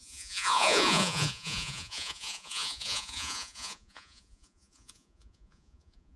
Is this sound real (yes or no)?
no